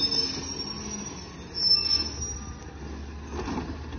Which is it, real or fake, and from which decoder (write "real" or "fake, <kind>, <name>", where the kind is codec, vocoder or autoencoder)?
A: real